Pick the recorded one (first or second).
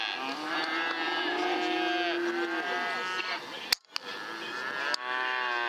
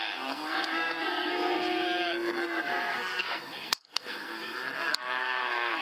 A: first